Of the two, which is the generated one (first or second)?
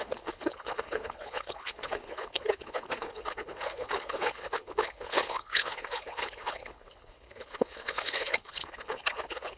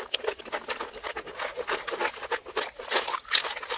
first